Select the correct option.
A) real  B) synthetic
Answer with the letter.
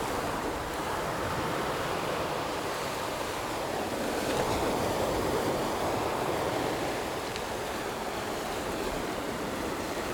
B